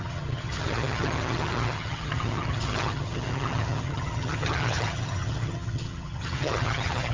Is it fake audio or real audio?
fake